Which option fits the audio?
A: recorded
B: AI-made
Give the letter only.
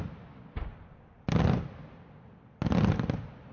A